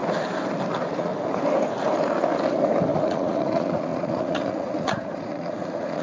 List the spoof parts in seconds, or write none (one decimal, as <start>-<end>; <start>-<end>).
0.7-1.1; 2.9-6.0